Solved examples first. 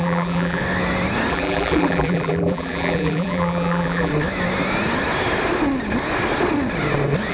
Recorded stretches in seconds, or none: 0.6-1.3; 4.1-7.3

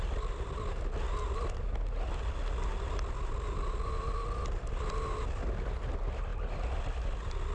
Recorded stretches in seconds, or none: 0.0-7.5

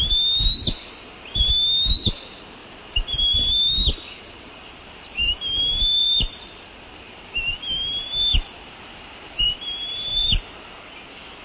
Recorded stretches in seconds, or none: 0.0-2.6; 7.2-8.3; 10.4-11.4

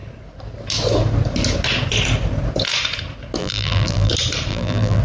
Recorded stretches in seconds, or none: 0.0-3.4; 4.1-4.5